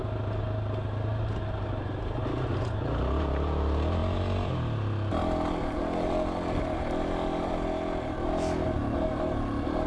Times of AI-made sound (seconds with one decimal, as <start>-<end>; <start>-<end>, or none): none